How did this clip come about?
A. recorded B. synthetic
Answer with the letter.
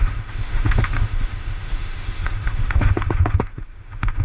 B